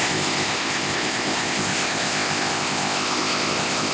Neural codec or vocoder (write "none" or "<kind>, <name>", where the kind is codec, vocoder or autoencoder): codec, ZipCodec